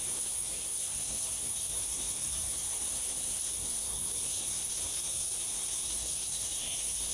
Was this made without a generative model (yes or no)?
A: no